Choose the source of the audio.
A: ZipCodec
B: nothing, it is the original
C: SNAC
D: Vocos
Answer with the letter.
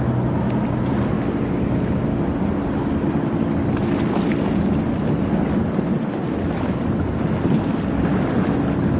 B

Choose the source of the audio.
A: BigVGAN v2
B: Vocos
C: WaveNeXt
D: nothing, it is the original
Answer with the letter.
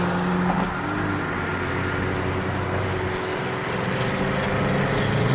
D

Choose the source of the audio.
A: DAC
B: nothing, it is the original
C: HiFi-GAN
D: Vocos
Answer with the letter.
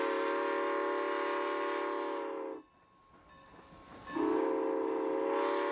B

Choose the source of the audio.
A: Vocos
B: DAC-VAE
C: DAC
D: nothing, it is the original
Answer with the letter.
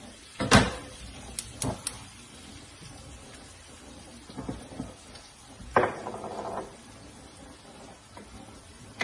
D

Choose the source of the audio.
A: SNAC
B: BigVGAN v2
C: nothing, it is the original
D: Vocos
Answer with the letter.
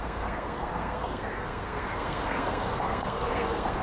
A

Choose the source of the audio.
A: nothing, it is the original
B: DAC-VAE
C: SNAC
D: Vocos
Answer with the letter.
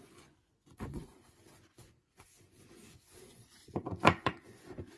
D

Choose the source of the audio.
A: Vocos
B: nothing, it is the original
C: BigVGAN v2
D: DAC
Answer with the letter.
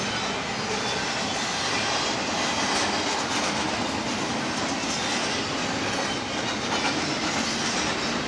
B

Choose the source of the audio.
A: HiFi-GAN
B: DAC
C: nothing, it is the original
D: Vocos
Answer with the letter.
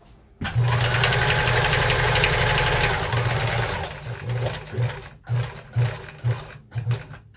C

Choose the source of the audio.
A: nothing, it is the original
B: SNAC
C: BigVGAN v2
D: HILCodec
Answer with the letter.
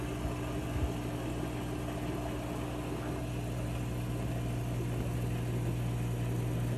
A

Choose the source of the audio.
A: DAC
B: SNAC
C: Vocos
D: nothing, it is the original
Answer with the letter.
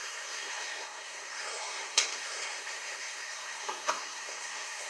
B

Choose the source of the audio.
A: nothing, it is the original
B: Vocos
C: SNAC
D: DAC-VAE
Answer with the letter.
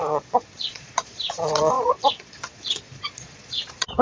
B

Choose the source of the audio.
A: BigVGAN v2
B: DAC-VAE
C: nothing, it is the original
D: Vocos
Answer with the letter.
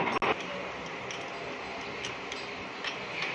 C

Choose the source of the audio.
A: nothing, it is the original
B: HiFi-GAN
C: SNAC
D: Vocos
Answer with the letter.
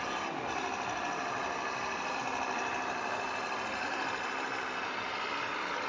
A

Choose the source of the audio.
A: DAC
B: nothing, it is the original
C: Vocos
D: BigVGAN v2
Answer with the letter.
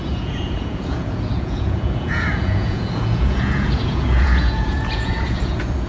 C